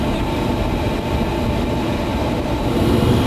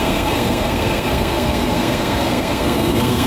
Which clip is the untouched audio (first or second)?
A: first